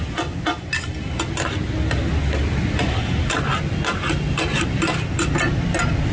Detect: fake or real real